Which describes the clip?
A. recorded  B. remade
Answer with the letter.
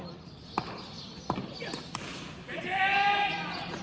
A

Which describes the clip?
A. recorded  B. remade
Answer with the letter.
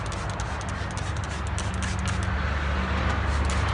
A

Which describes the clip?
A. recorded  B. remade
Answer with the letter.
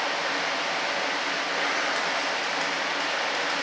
A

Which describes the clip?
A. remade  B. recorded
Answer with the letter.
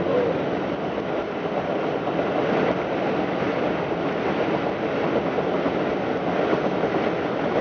B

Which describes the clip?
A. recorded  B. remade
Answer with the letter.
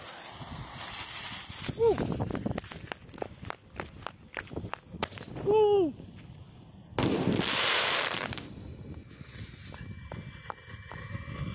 A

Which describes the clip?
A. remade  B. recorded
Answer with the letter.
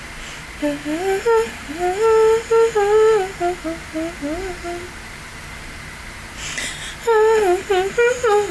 B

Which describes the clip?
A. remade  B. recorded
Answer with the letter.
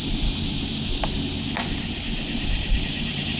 B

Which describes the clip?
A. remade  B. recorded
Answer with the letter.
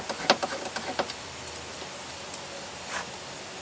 B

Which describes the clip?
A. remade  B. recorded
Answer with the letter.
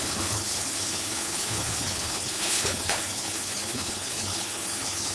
A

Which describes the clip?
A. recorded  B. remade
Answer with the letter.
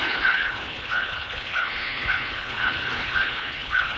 B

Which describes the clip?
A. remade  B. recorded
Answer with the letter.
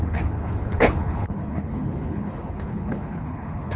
A